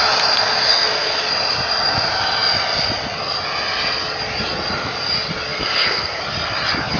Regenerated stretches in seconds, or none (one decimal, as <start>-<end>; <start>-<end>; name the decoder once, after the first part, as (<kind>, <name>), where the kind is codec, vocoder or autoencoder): 0.7-1.3 (codec, SNAC); 5.5-6.2